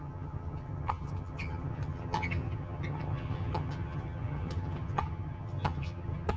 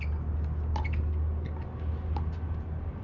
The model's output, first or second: first